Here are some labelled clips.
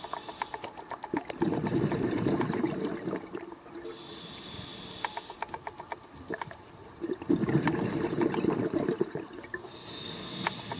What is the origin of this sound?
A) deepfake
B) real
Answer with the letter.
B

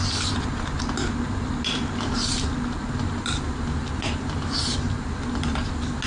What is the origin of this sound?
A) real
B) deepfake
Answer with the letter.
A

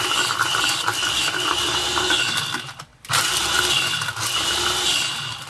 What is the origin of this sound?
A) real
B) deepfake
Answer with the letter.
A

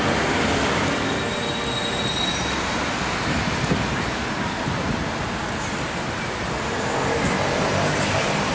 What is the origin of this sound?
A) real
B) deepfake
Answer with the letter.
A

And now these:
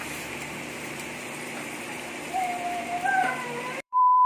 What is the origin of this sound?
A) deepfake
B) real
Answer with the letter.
A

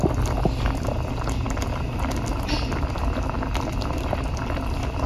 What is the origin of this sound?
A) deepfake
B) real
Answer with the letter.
B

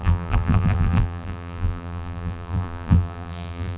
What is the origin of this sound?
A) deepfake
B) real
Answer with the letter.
A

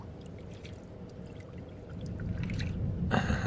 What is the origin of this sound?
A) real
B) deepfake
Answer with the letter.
B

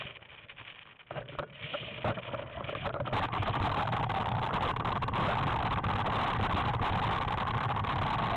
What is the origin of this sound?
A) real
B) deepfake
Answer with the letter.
A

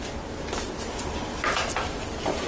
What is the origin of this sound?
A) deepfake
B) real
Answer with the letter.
B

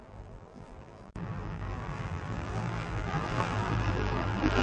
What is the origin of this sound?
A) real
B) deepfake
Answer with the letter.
B